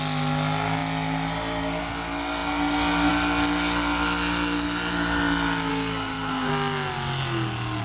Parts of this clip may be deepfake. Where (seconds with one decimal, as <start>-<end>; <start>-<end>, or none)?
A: 5.7-6.5